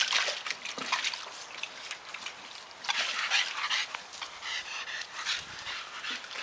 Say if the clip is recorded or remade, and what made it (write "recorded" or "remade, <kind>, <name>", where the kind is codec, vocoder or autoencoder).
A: recorded